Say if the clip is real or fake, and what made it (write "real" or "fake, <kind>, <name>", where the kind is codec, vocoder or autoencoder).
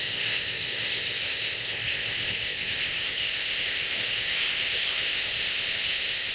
fake, codec, ZipCodec